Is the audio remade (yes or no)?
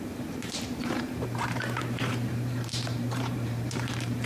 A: yes